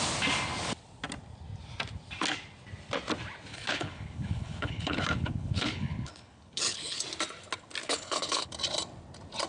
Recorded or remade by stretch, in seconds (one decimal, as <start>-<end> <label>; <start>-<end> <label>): 0.0-3.5 recorded; 3.5-7.0 remade; 7.0-7.8 recorded; 7.8-8.5 remade; 8.5-9.5 recorded